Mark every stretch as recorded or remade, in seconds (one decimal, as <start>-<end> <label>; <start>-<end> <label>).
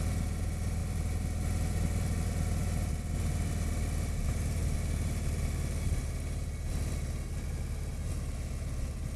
0.0-9.2 recorded